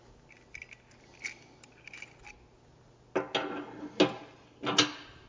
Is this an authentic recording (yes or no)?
yes